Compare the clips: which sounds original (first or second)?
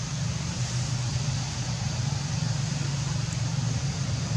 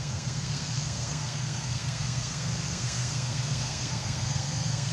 first